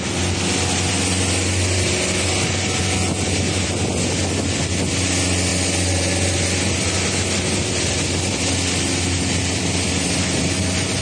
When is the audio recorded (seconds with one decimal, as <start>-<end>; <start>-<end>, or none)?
0.0-11.0